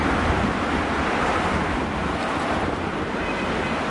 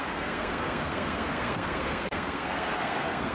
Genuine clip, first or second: first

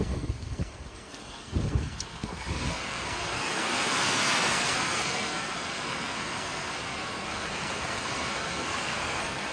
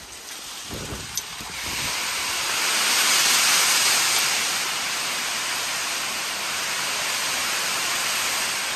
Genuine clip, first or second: second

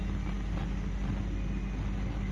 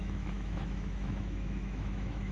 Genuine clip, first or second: first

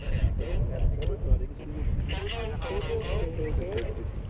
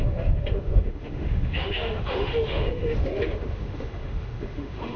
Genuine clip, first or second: first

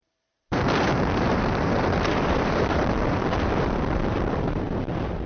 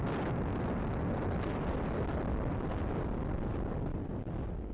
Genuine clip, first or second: second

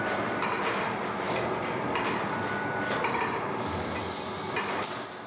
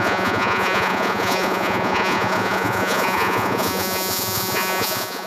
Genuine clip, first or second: first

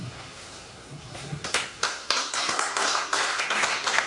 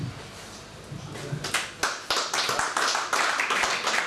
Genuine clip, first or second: second